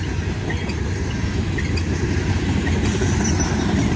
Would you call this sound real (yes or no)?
yes